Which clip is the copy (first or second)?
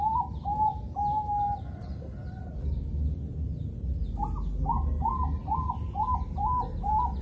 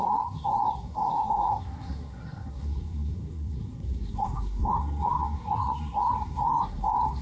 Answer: second